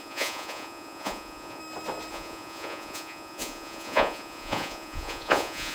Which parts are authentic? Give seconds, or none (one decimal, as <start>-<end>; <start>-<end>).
1.6-2.1